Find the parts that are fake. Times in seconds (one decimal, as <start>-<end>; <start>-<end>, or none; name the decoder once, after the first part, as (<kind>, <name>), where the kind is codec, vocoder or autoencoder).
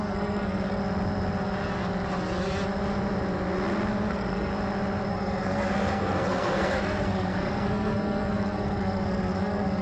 0.0-0.8 (codec, SNAC); 4.1-4.5; 5.1-9.8